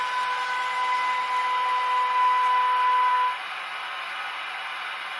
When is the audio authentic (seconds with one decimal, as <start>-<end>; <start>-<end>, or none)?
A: 0.0-5.2